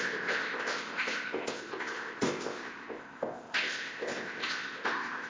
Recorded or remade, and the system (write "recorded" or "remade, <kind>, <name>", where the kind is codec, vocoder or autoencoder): remade, codec, ZipCodec